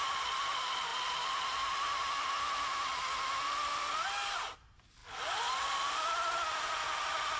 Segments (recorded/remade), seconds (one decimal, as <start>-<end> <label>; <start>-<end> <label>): 0.0-0.9 recorded; 0.9-2.3 remade; 2.3-5.0 recorded; 5.0-5.9 remade; 5.9-7.4 recorded